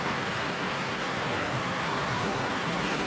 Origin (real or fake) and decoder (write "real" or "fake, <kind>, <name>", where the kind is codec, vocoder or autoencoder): fake, codec, SNAC